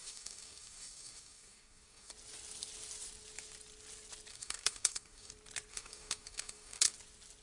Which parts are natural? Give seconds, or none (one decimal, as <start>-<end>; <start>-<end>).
2.1-4.3; 5.3-5.7; 6.9-7.4